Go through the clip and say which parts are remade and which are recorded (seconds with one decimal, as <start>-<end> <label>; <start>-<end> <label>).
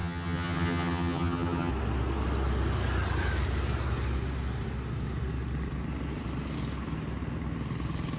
0.0-1.7 remade; 1.7-8.2 recorded